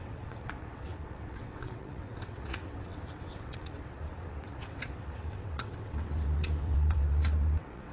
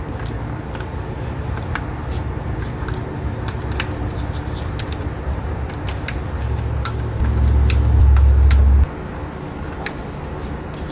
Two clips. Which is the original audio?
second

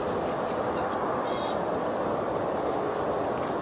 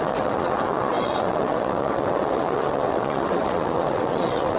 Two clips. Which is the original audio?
first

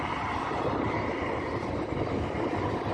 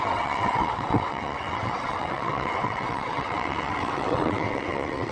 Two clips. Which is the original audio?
first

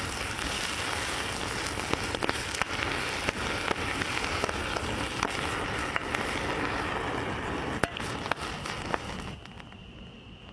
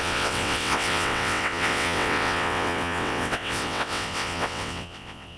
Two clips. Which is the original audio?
first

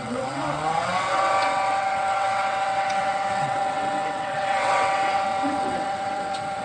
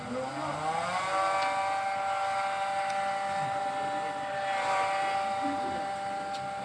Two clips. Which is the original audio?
second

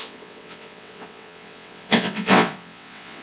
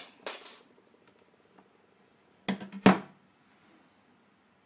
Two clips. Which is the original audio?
second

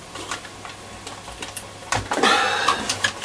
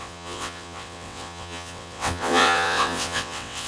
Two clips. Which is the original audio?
first